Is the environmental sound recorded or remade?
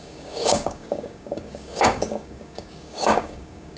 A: remade